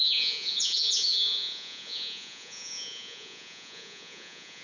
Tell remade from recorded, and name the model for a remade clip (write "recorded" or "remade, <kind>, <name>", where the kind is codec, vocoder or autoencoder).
remade, vocoder, Vocos